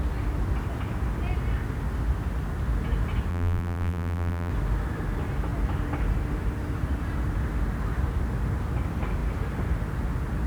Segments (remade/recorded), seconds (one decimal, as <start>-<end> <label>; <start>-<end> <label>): 0.0-3.3 recorded; 3.3-4.5 remade; 4.5-10.5 recorded